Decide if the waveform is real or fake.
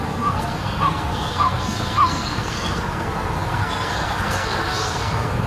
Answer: fake